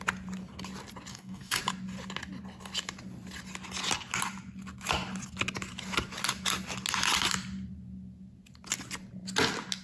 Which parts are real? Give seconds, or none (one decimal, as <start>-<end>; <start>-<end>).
0.0-1.1; 1.6-9.8